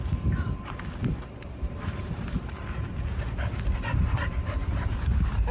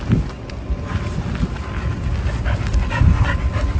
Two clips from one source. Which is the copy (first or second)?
first